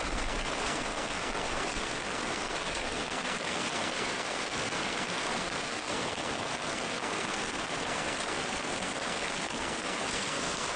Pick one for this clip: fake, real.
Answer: fake